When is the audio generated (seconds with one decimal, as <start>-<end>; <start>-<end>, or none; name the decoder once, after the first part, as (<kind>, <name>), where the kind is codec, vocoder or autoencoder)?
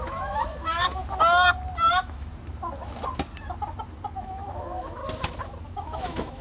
0.0-1.0 (autoencoder, DAC-VAE); 1.9-2.3; 4.2-5.0; 5.6-6.4